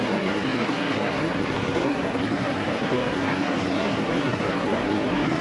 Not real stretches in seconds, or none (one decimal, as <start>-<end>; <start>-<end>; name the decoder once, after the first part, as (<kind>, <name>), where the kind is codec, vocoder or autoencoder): 0.0-5.4 (codec, SNAC)